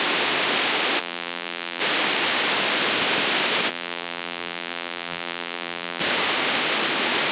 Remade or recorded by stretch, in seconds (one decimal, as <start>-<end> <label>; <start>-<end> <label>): 0.0-1.0 recorded; 1.0-1.8 remade; 1.8-3.7 recorded; 3.7-6.0 remade; 6.0-7.3 recorded

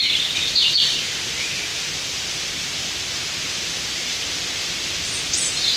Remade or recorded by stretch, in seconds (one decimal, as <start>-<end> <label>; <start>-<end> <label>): 0.0-5.8 recorded

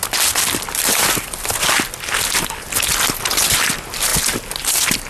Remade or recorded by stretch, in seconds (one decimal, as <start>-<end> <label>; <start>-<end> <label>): 0.0-5.1 recorded

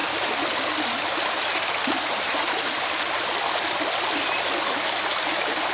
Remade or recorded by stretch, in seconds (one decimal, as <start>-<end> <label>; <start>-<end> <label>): 0.0-5.7 recorded

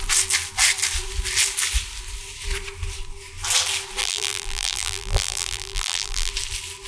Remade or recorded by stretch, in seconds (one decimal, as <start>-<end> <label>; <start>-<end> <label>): 0.0-4.0 recorded; 4.0-6.3 remade; 6.3-6.9 recorded

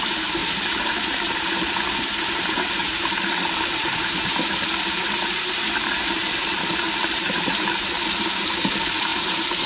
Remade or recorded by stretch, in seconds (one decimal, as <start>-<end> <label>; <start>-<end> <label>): 0.0-9.7 remade

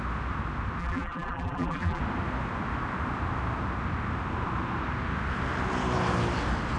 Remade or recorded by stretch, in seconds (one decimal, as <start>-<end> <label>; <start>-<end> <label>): 0.0-0.8 recorded; 0.8-2.0 remade; 2.0-6.8 recorded